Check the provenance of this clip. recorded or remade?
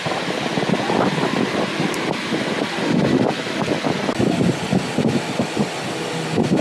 recorded